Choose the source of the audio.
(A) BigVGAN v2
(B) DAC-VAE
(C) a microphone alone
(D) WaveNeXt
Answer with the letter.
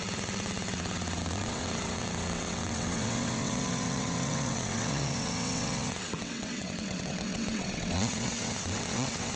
D